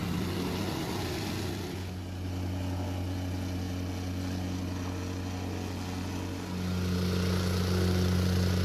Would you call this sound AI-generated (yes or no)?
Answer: no